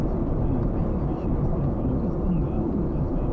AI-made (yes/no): yes